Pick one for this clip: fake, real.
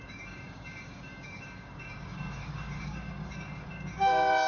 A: fake